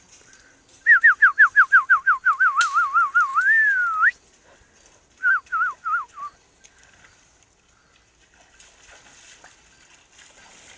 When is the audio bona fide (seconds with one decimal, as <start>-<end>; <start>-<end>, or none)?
0.0-10.8

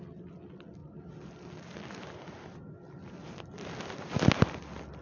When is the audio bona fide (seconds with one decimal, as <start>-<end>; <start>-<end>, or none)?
0.0-5.0

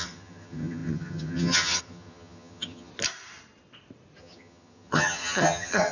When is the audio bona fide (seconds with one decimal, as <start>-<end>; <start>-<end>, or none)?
2.9-4.2

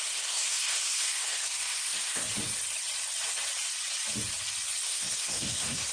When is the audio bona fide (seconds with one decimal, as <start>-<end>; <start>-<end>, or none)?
2.3-4.8

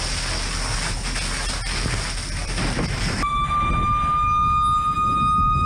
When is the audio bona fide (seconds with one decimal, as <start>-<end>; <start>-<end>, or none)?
0.0-2.4; 3.7-5.7